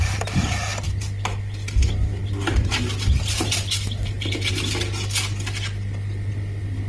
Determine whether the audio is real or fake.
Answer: real